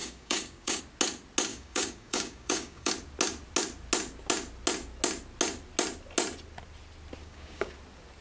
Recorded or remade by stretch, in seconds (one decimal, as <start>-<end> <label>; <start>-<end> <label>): 0.0-0.8 remade; 0.8-1.5 recorded; 1.5-2.9 remade; 2.9-7.2 recorded; 7.2-7.7 remade; 7.7-8.2 recorded